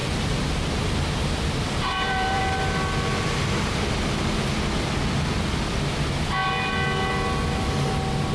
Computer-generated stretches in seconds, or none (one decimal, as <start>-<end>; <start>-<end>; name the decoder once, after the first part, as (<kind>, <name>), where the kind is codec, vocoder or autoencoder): 0.0-2.4 (vocoder, BigVGAN v2)